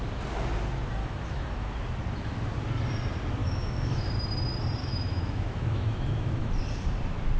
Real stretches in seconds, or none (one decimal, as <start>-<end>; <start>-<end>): 0.0-1.0; 1.7-3.4; 4.1-4.8; 6.5-7.4